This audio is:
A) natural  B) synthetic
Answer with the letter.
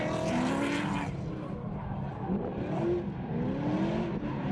A